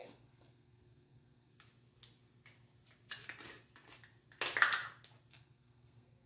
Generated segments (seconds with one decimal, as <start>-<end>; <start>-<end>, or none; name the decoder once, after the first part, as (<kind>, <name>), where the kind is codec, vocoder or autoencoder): 0.0-1.5 (codec, SNAC); 5.3-6.3